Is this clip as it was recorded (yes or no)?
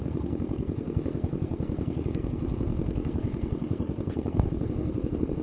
no